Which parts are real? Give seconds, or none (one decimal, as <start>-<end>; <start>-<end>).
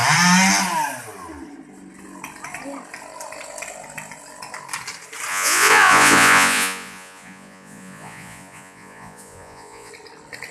0.0-5.3; 9.9-10.5